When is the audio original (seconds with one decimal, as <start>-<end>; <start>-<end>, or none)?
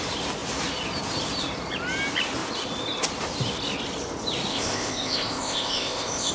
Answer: 0.0-4.5